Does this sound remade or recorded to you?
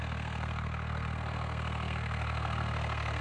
remade